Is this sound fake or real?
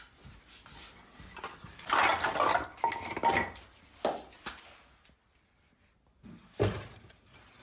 real